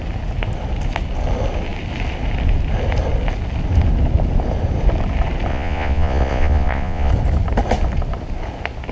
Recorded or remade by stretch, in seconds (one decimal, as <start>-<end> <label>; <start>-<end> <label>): 0.0-5.5 recorded; 5.5-7.1 remade; 7.1-8.9 recorded